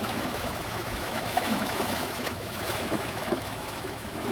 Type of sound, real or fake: fake